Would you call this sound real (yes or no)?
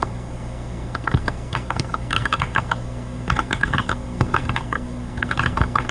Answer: no